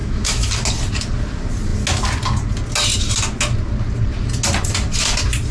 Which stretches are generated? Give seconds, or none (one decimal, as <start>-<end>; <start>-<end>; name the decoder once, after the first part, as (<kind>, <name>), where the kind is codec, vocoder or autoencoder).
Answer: 0.0-0.5 (autoencoder, DAC-VAE)